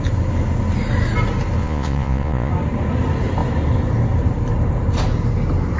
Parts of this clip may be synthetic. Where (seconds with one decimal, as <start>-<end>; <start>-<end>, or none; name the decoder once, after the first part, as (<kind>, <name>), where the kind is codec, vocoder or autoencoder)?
1.6-2.5 (vocoder, Vocos)